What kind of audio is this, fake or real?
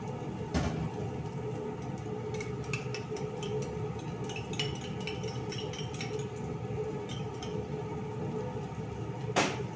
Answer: real